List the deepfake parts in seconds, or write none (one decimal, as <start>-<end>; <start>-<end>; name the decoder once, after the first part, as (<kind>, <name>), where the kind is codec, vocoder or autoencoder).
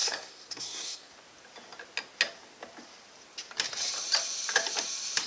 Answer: 0.0-1.1 (codec, SNAC)